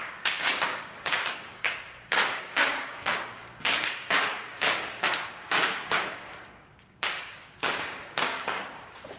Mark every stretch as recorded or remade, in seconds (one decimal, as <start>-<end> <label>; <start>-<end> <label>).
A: 0.0-9.2 remade